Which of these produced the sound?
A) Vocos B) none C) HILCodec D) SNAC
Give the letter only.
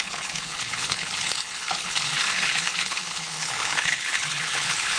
C